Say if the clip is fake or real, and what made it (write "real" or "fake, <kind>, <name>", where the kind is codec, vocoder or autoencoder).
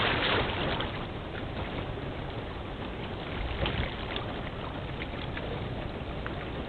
real